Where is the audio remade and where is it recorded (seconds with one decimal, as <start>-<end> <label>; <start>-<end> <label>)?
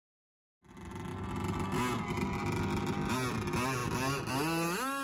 0.0-5.0 recorded